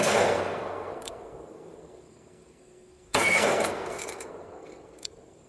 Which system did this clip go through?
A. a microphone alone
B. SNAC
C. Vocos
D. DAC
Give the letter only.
B